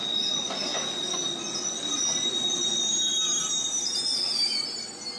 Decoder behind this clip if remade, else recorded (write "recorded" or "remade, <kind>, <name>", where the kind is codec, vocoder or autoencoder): recorded